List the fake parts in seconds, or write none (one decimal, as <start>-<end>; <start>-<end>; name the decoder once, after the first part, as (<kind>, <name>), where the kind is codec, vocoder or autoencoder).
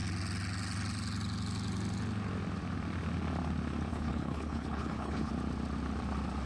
3.9-5.3 (codec, HILCodec)